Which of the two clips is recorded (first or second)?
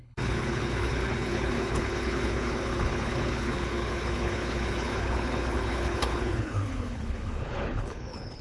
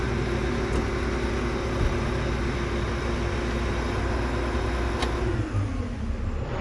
second